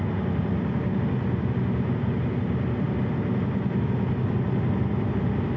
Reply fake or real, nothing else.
real